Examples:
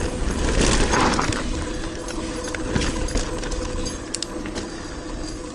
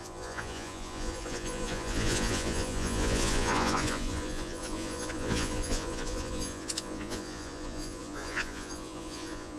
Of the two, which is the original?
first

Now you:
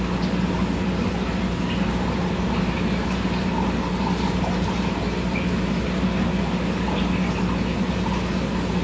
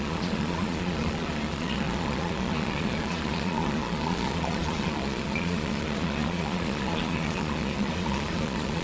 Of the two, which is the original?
first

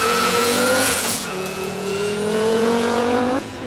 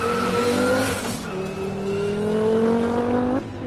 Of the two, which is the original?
second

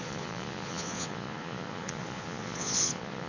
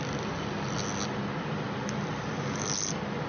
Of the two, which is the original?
second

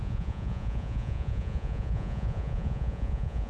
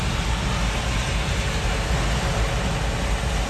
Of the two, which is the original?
second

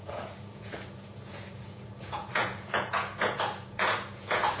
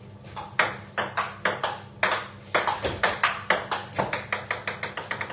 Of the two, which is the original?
second